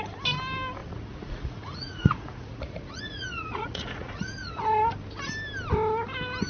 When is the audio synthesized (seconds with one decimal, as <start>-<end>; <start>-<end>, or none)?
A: 0.8-4.7